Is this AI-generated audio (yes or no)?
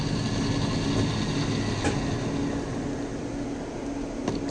no